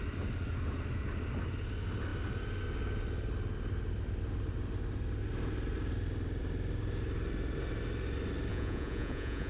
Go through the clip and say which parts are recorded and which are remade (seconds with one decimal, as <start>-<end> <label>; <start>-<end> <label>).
0.0-8.5 recorded; 8.5-9.5 remade

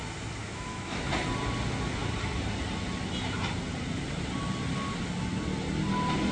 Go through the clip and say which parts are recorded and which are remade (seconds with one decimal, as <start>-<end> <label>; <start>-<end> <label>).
0.0-0.4 recorded; 0.4-1.0 remade; 1.0-6.3 recorded

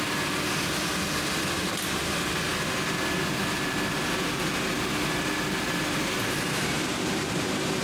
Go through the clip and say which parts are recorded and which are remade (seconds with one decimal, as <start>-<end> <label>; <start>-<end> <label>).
0.0-7.8 recorded

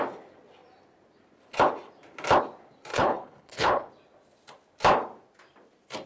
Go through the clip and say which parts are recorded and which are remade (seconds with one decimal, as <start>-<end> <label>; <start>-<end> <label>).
0.0-2.9 recorded; 2.9-3.9 remade; 3.9-6.1 recorded

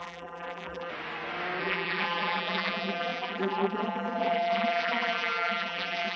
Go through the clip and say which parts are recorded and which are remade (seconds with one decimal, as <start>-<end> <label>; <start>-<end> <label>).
0.0-0.9 remade; 0.9-1.6 recorded; 1.6-6.2 remade

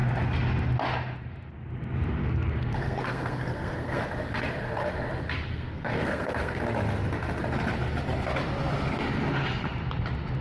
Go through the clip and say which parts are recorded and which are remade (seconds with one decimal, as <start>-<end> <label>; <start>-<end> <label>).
0.0-2.2 recorded; 2.2-4.0 remade; 4.0-5.5 recorded; 5.5-6.6 remade; 6.6-10.4 recorded

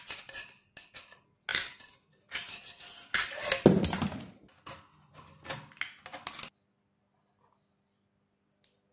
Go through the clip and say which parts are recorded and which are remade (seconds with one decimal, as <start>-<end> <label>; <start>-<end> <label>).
0.0-8.9 recorded